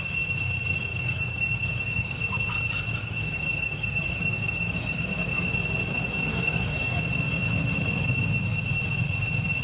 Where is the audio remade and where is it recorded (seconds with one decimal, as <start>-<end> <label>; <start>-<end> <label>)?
0.0-0.9 recorded; 0.9-2.3 remade; 2.3-3.0 recorded; 3.0-5.4 remade; 5.4-6.3 recorded; 6.3-7.0 remade; 7.0-9.6 recorded